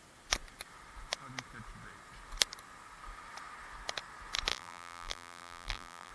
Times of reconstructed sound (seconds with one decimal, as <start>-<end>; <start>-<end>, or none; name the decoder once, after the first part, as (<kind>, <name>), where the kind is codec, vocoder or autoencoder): 4.5-6.1 (vocoder, BigVGAN v2)